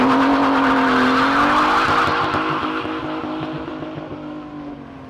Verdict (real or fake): real